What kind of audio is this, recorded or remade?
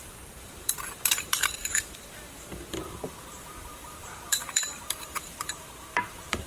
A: remade